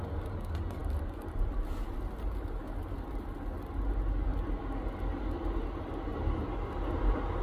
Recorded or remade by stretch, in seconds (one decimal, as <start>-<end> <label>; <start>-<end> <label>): 0.0-7.4 recorded